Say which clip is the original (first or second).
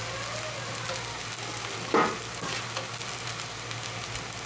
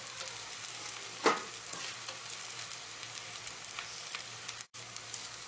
first